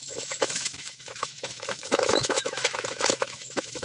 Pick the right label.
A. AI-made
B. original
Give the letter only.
A